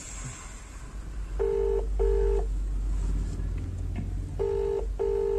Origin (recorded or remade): recorded